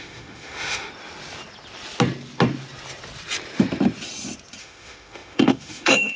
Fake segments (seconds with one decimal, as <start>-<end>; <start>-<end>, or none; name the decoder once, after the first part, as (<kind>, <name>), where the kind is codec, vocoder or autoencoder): 0.0-0.9 (autoencoder, DAC-VAE); 4.6-6.2